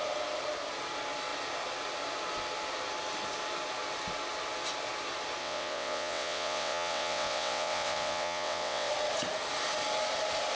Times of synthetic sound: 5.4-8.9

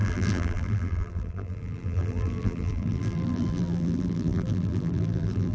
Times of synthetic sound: 0.0-5.5

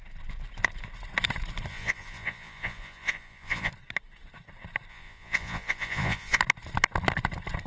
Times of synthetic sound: 1.7-3.7; 4.9-6.4

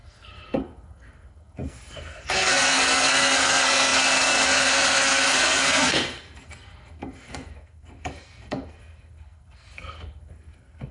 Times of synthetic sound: 0.0-10.9